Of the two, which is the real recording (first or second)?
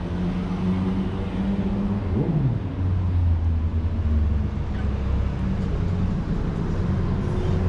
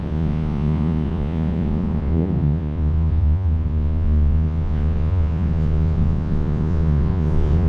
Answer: first